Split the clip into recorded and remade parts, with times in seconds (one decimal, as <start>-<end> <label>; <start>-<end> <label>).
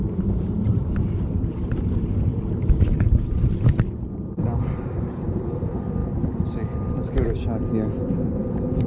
0.0-6.0 remade; 6.0-8.0 recorded; 8.0-8.9 remade